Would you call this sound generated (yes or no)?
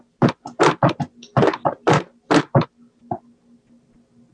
no